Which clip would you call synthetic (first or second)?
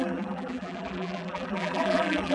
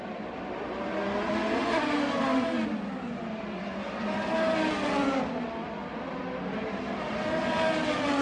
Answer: first